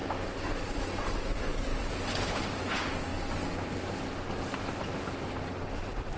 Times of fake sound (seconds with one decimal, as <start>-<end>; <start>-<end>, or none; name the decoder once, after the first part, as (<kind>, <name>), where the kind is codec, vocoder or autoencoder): 1.7-2.6 (vocoder, BigVGAN v2)